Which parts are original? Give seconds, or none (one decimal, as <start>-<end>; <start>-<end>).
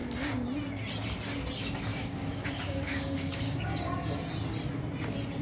0.0-1.9; 3.7-5.4